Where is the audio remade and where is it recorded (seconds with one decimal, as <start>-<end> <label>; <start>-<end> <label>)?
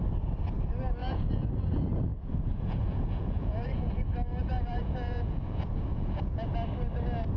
0.0-1.0 recorded; 1.0-1.5 remade; 1.5-2.1 recorded; 2.1-3.9 remade; 3.9-4.4 recorded; 4.4-6.5 remade; 6.5-7.4 recorded